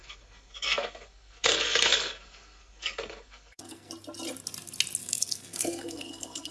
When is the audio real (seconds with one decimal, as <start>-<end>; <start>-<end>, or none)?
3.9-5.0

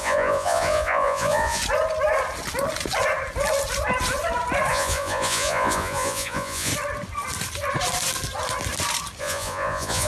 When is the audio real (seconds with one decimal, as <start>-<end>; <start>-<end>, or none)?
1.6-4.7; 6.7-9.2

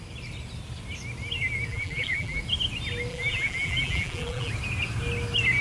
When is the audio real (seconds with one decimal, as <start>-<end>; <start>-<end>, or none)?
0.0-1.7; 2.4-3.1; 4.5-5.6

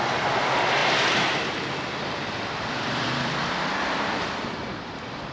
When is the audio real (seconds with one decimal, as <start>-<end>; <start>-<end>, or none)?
none

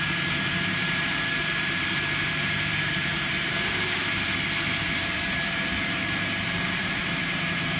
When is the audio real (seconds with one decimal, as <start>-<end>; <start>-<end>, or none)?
4.0-4.8